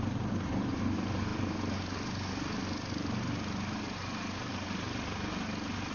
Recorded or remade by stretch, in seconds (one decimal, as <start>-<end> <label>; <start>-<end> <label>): 0.0-5.9 recorded